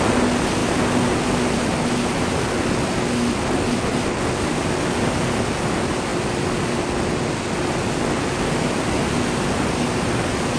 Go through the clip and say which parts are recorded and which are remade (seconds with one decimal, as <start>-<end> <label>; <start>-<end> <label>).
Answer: 0.0-10.6 recorded